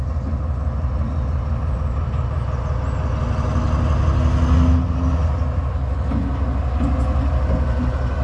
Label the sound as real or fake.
real